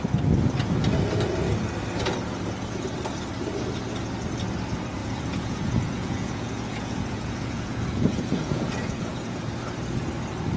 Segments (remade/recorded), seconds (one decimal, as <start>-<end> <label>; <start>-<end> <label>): 0.0-5.0 recorded; 5.0-9.5 remade; 9.5-10.6 recorded